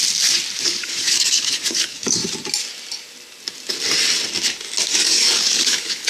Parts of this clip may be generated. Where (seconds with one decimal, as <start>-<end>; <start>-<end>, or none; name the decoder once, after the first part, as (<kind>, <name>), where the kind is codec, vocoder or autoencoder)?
0.6-2.2 (codec, DAC); 4.9-6.1